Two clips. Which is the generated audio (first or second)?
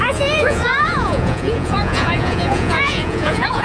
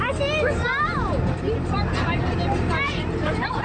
first